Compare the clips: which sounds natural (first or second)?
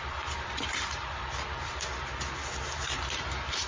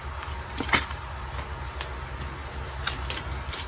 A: second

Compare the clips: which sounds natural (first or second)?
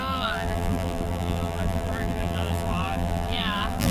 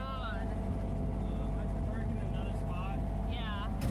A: second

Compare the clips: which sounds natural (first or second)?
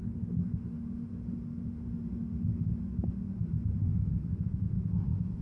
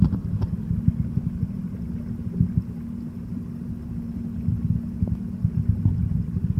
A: second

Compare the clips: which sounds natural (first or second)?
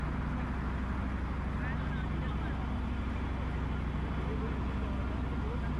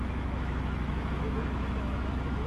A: first